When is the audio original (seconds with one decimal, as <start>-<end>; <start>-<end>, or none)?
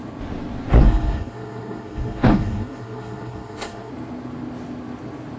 0.0-0.7; 3.9-5.4